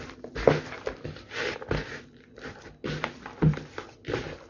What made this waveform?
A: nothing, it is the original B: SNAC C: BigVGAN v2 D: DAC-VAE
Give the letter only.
A